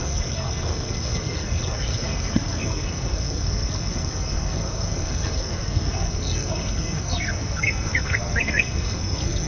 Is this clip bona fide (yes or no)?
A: no